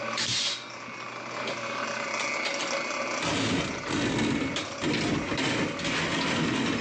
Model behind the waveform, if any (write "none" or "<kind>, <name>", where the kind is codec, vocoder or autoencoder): none